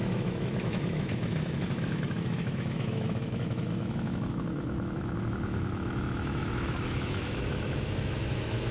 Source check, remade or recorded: remade